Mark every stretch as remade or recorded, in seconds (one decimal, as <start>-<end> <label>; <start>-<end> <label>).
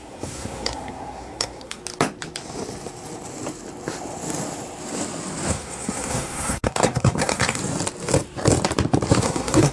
0.0-1.8 remade; 1.8-5.5 recorded; 5.5-7.6 remade; 7.6-9.2 recorded; 9.2-9.7 remade